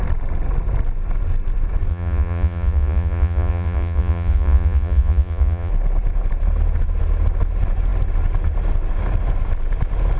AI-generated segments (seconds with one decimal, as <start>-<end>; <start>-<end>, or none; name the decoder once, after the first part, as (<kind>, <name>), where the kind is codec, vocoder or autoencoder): 1.9-5.7 (vocoder, Vocos)